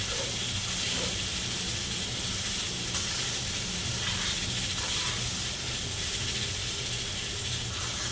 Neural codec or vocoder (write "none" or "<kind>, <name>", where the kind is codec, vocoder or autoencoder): none